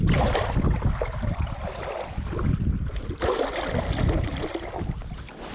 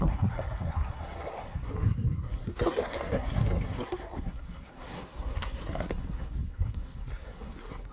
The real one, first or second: first